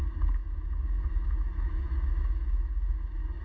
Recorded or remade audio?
remade